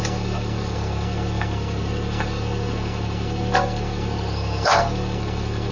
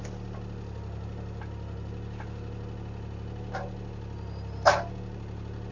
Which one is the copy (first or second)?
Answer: first